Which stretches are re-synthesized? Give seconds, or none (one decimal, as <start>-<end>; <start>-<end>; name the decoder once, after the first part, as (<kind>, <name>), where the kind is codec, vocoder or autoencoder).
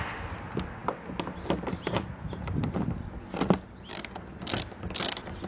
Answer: none